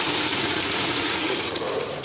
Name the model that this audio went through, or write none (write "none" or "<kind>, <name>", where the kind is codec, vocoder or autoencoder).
vocoder, Vocos